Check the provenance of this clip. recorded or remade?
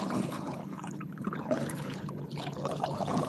remade